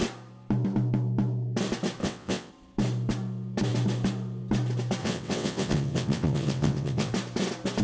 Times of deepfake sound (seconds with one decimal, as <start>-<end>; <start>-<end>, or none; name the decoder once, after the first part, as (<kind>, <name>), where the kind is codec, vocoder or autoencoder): 2.0-2.5 (vocoder, WaveNeXt); 5.0-7.1